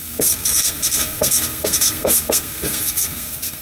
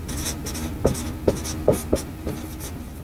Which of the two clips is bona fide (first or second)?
second